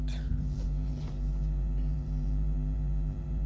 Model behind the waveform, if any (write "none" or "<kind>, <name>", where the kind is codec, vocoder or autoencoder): vocoder, BigVGAN v2